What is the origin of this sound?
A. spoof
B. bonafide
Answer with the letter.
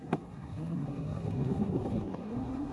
A